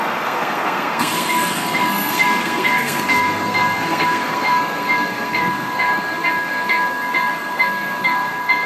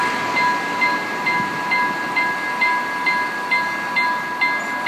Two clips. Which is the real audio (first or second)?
second